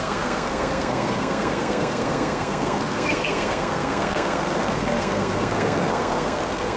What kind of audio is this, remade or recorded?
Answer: remade